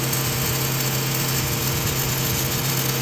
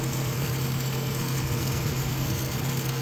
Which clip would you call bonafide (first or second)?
first